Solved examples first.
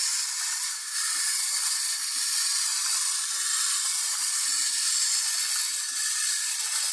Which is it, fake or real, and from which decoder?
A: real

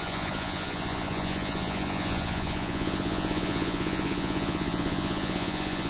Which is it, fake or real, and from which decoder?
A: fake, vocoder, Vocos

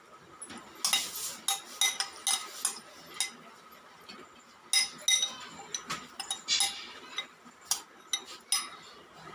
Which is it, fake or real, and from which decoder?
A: real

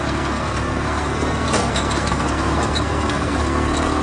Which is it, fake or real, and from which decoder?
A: fake, codec, SNAC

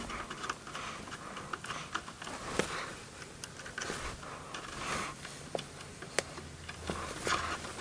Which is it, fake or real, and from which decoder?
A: real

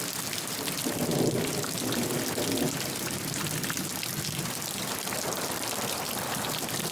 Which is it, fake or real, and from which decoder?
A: real